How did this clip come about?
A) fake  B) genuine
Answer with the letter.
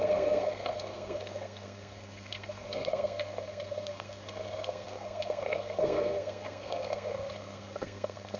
A